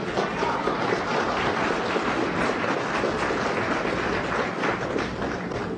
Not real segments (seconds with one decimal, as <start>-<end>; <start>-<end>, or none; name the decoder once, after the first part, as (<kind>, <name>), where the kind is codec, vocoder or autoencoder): none